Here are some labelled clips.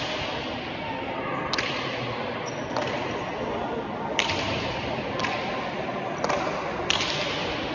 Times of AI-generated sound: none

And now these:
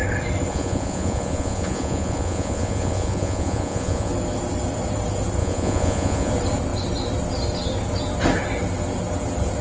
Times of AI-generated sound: 0.5-4.1 (vocoder, Vocos); 5.4-6.3